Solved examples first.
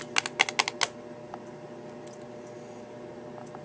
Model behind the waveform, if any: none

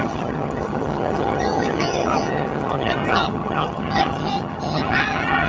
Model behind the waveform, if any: vocoder, HiFi-GAN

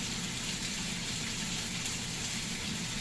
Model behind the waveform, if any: vocoder, BigVGAN v2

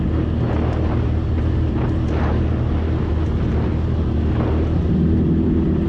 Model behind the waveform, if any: none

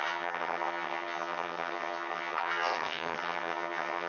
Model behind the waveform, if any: vocoder, HiFi-GAN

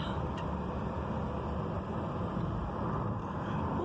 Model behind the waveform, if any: none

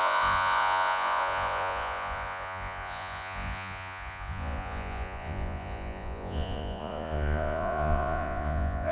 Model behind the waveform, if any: vocoder, Vocos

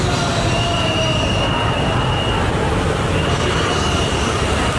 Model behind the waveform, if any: none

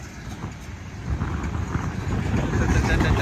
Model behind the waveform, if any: none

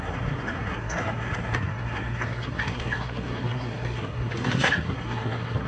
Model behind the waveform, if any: codec, SNAC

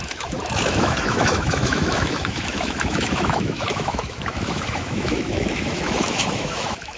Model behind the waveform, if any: autoencoder, DAC-VAE